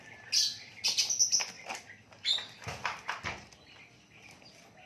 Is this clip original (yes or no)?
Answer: yes